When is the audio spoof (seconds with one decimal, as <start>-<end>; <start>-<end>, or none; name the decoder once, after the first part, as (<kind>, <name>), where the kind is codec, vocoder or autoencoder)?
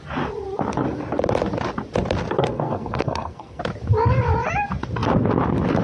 2.4-3.6 (codec, SNAC)